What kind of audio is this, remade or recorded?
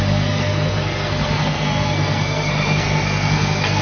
remade